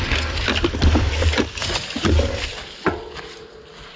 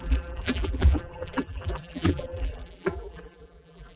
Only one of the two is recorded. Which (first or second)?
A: first